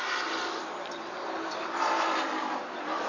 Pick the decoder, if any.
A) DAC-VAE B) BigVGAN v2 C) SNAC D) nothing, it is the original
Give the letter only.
B